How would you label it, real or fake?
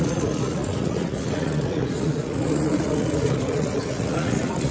fake